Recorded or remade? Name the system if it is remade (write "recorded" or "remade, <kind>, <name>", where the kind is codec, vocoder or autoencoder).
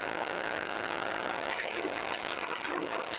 remade, vocoder, HiFi-GAN